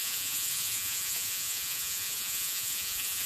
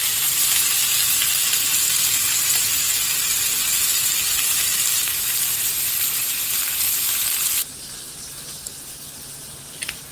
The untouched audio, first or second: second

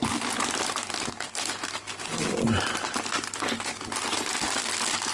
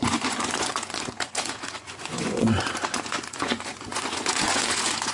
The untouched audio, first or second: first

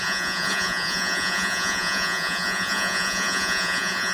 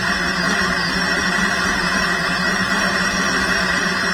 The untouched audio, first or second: second